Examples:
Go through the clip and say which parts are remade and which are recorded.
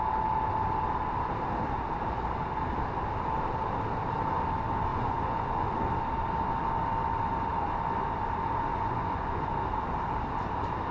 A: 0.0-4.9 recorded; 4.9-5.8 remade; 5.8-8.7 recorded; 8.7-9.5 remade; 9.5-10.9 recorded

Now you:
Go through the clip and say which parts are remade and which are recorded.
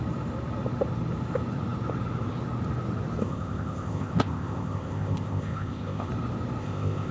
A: 0.0-3.2 recorded; 3.2-6.1 remade; 6.1-6.6 recorded; 6.6-7.1 remade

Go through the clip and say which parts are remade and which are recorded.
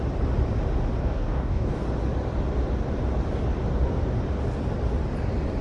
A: 0.0-1.0 recorded; 1.0-1.8 remade; 1.8-5.6 recorded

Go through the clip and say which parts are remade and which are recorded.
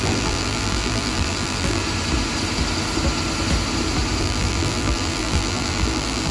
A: 0.0-1.8 remade; 1.8-4.2 recorded; 4.2-6.3 remade